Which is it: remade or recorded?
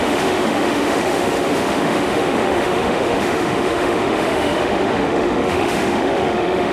remade